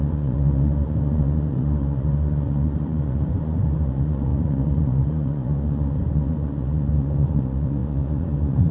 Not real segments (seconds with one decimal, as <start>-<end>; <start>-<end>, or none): 0.0-8.7